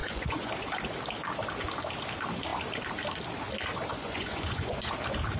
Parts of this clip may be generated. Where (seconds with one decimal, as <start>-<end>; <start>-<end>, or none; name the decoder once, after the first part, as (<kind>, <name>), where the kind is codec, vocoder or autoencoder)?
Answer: 0.0-0.5 (vocoder, Vocos); 3.9-4.9